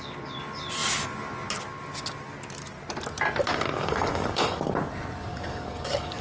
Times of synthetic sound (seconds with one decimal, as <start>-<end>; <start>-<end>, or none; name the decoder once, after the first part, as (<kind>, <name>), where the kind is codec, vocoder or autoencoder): 3.5-4.7 (codec, DAC); 5.3-6.2

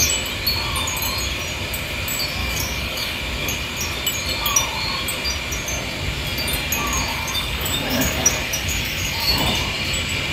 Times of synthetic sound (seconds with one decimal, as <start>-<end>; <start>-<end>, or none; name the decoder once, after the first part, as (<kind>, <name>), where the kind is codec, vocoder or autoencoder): 2.4-3.2 (codec, DAC); 7.1-9.4

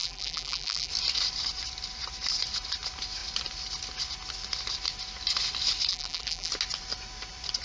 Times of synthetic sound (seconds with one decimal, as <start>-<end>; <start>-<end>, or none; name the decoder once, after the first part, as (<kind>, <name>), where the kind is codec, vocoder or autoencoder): 0.0-0.9 (vocoder, BigVGAN v2); 5.9-6.5

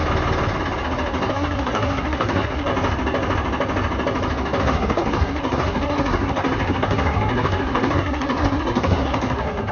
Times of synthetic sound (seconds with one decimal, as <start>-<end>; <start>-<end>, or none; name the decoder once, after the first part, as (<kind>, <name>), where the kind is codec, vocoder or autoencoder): 1.3-2.7 (codec, SNAC); 4.6-9.7

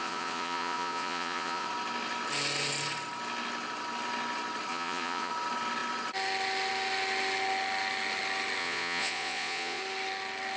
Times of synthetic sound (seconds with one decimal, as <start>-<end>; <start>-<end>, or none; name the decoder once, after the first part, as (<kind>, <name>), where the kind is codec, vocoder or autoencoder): 0.0-1.7 (vocoder, Vocos); 4.7-5.3; 8.6-9.8